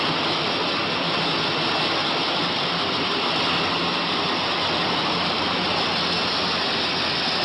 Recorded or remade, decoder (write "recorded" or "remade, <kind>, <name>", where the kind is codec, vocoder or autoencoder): recorded